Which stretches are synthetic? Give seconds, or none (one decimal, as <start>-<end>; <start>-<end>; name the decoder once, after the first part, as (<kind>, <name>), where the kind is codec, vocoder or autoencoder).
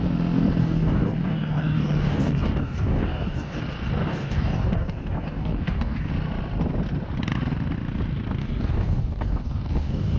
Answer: 0.6-3.6 (codec, DAC); 4.1-6.1; 8.4-10.2